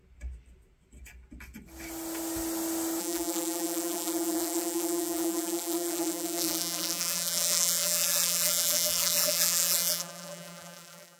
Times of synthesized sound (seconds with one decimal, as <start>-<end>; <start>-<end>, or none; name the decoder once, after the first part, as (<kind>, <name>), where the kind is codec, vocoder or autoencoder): 3.0-11.2 (vocoder, BigVGAN v2)